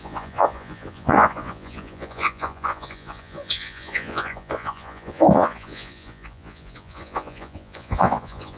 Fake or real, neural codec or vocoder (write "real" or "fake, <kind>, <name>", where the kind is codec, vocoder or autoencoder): fake, vocoder, Vocos